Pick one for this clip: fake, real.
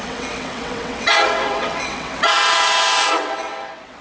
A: fake